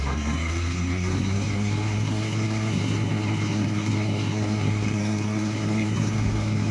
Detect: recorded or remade remade